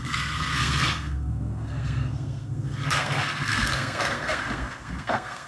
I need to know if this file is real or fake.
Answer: fake